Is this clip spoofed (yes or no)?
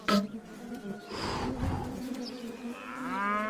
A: no